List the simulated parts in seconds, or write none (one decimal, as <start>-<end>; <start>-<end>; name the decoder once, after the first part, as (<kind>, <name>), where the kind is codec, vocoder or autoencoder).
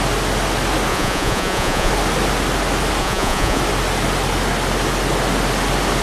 0.9-1.9 (vocoder, Vocos); 3.0-3.6